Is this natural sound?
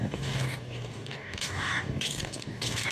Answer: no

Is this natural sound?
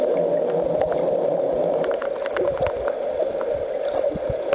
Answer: yes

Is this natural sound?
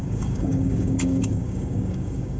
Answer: no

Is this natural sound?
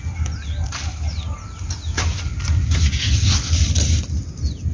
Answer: yes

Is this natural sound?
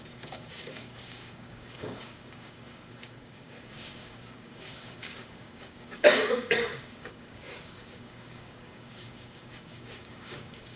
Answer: no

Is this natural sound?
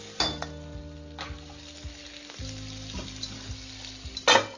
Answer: yes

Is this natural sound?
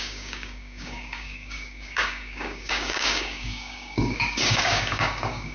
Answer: no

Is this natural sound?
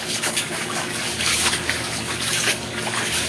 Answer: no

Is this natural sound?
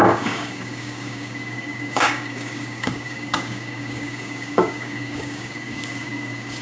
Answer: no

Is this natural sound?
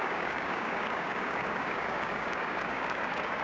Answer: no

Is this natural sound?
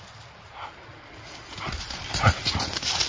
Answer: yes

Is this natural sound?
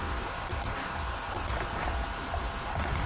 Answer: yes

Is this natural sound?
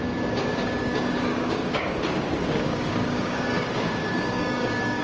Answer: no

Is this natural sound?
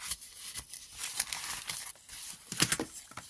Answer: yes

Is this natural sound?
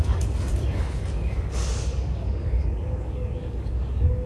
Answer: no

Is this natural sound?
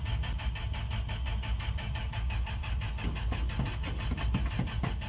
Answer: yes